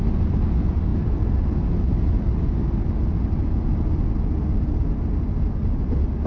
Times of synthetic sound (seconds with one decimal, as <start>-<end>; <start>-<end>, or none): none